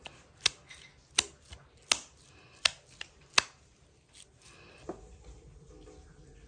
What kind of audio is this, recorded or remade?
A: recorded